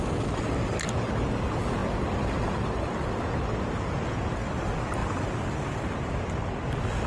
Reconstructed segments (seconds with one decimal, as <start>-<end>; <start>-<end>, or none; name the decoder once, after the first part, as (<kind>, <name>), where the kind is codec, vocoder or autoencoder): none